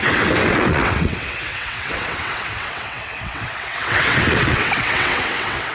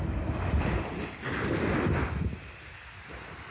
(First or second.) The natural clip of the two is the second